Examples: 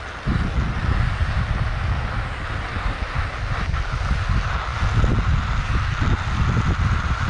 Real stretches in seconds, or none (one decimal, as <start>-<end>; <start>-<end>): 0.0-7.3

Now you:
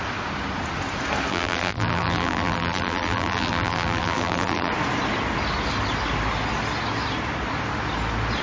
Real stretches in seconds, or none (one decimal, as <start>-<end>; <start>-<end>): 0.0-1.3; 4.7-8.4

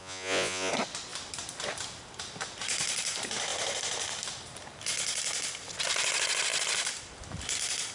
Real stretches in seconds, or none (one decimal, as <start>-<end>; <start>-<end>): 0.7-7.9

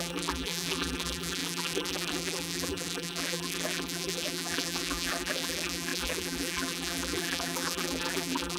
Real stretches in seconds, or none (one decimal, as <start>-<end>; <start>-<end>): none

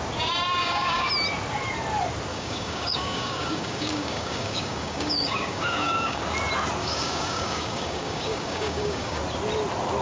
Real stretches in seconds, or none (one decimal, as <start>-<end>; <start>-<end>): 0.0-0.6; 1.1-2.3; 6.2-6.8; 9.2-10.0

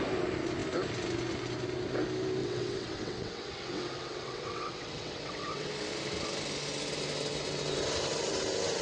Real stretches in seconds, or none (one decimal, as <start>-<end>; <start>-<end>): 0.0-2.4; 5.7-8.8

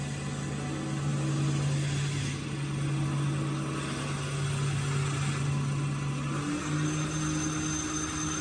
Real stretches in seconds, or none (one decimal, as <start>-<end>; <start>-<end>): 0.0-8.4

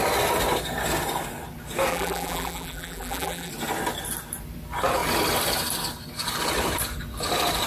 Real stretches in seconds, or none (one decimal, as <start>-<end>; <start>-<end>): 0.0-1.9; 3.5-7.7